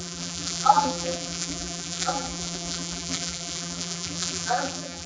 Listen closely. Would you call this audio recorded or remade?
remade